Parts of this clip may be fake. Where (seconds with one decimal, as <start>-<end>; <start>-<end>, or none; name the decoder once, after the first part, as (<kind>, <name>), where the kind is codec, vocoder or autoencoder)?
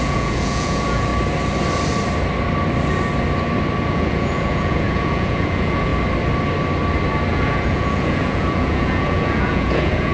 0.0-1.1 (vocoder, Vocos); 3.9-5.9; 7.3-10.1